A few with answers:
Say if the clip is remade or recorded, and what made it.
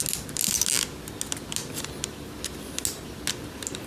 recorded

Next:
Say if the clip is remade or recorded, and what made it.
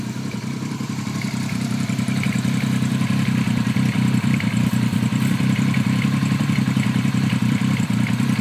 remade, vocoder, BigVGAN v2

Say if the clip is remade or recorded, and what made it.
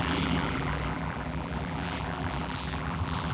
remade, vocoder, BigVGAN v2